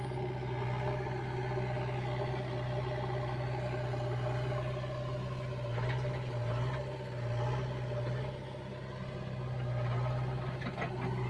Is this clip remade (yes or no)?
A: no